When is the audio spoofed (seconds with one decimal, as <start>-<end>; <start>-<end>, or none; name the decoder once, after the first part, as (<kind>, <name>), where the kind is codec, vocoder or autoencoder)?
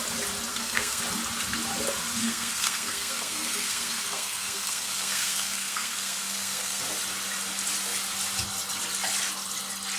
0.5-1.0 (codec, SNAC); 2.2-6.8